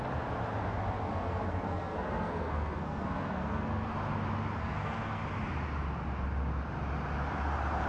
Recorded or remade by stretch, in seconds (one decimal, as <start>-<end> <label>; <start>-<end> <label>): 0.0-1.1 recorded; 1.1-3.9 remade; 3.9-4.6 recorded; 4.6-5.2 remade; 5.2-7.9 recorded